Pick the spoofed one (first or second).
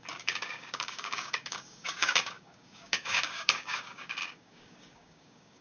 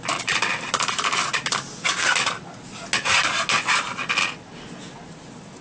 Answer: first